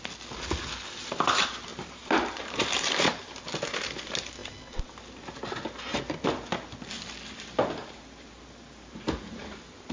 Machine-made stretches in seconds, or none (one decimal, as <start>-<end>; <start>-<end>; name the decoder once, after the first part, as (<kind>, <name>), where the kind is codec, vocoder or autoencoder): 1.7-3.4 (vocoder, BigVGAN v2); 7.8-9.9